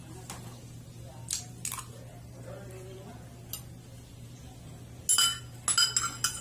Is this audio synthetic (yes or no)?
no